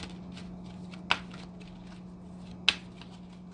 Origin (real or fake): real